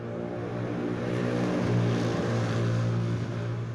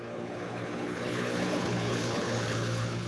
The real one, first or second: first